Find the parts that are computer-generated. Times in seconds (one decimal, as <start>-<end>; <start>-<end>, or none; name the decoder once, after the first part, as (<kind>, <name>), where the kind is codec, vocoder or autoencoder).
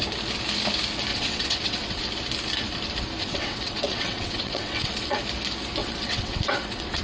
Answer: 1.1-2.0 (vocoder, WaveNeXt); 3.2-5.2; 5.8-7.0